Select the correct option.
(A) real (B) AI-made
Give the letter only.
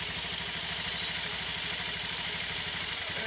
A